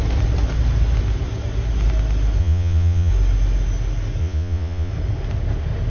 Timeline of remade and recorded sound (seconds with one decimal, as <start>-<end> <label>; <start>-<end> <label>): 0.0-2.4 recorded; 2.4-3.1 remade; 3.1-4.2 recorded; 4.2-4.9 remade; 4.9-5.9 recorded